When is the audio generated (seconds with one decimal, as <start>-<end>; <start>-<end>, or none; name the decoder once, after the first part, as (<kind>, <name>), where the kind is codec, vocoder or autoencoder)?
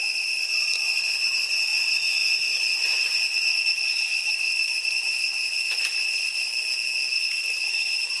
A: 0.0-6.5 (vocoder, BigVGAN v2); 7.2-8.2